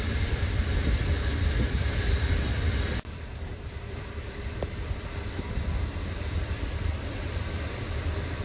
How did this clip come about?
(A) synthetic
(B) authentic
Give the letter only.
A